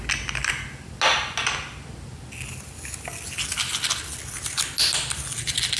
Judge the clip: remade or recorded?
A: recorded